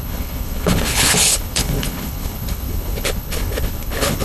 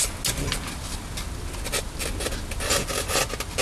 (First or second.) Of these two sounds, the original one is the second